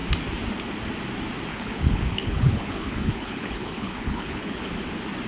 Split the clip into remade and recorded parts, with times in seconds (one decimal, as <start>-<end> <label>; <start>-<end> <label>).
0.0-1.5 recorded; 1.5-4.7 remade; 4.7-5.3 recorded